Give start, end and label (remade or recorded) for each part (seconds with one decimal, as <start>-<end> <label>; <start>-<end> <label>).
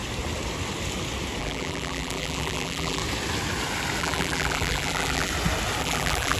0.0-1.4 recorded; 1.4-3.0 remade; 3.0-4.0 recorded; 4.0-5.3 remade; 5.3-5.8 recorded; 5.8-6.4 remade